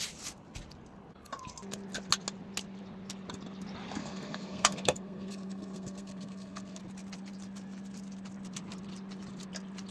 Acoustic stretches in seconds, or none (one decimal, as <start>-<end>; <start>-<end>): 0.0-4.0; 6.8-9.9